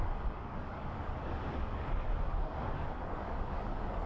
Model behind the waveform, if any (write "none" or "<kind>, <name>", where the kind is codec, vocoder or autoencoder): codec, DAC